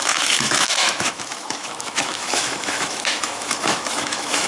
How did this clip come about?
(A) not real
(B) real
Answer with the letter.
A